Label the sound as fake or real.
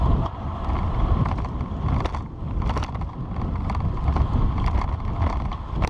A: real